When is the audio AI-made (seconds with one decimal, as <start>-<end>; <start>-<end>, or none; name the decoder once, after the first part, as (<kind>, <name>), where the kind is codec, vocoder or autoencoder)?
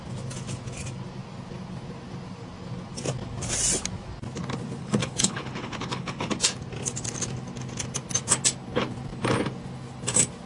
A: 4.8-6.3 (codec, HILCodec)